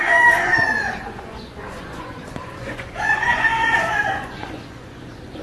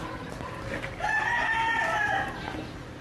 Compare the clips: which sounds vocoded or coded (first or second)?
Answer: first